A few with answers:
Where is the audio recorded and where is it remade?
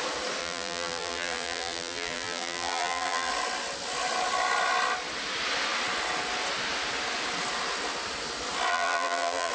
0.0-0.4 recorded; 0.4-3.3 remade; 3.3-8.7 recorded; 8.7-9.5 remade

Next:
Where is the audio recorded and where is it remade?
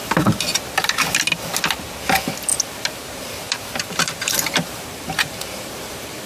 0.0-2.5 recorded; 2.5-6.3 remade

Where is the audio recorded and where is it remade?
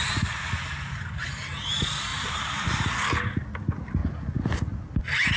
0.0-2.1 recorded; 2.1-2.9 remade; 2.9-5.4 recorded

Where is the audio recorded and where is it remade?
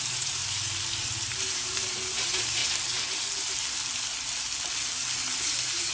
0.0-0.4 remade; 0.4-1.5 recorded; 1.5-2.6 remade; 2.6-5.4 recorded; 5.4-5.9 remade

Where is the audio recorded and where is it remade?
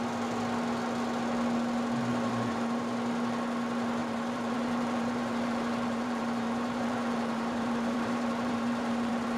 0.0-2.1 recorded; 2.1-2.9 remade; 2.9-4.0 recorded; 4.0-9.4 remade